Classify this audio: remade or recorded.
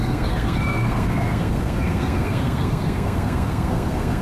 remade